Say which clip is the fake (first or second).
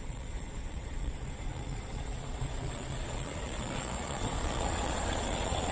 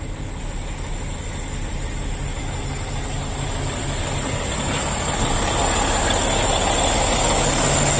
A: first